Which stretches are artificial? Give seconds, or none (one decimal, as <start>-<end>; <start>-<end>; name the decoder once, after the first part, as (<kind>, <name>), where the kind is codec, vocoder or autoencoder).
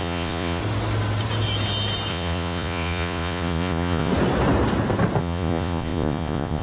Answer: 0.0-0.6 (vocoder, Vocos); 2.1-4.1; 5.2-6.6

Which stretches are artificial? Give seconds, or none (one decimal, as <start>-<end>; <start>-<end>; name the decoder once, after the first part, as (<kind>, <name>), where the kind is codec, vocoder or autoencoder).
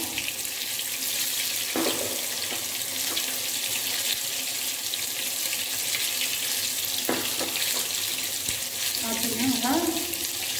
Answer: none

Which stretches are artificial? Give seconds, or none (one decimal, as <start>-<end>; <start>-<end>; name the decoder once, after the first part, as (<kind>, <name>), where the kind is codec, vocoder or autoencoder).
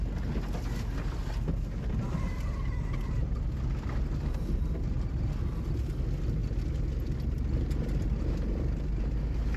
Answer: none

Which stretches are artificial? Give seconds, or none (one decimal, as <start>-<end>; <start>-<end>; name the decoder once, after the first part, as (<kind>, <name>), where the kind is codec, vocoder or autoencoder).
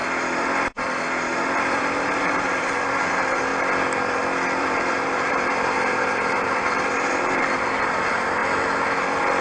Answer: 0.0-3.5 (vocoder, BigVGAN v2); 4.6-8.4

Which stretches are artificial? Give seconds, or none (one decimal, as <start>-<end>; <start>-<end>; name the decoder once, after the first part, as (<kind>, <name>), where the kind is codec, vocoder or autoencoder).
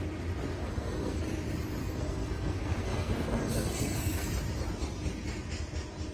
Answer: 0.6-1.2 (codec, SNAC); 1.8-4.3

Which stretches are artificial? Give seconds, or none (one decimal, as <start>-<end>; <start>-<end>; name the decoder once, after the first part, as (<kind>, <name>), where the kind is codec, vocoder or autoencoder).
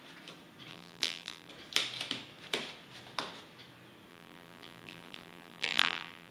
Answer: 0.7-1.5 (vocoder, BigVGAN v2); 4.1-6.3